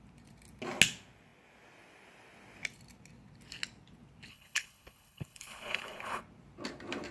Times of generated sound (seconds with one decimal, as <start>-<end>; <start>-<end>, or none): 4.3-6.2